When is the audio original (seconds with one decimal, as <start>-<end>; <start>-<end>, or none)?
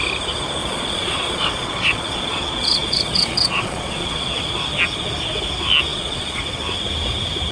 0.0-0.6; 4.4-5.9; 6.4-7.5